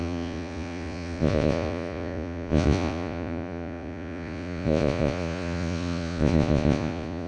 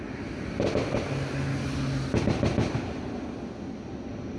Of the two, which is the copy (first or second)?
first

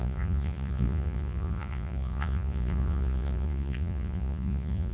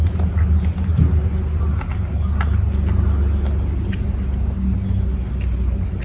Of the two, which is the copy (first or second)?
first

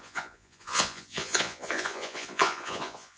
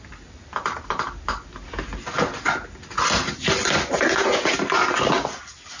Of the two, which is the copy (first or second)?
first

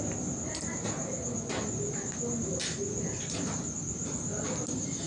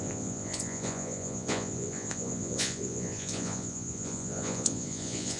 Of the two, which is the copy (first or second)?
second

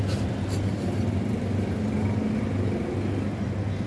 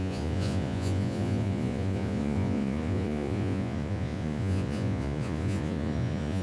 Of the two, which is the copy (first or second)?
second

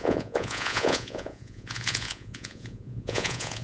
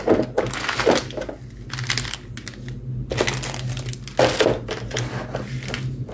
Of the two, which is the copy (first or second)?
first